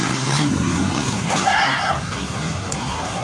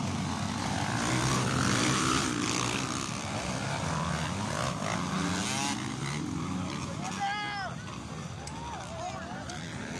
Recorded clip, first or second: second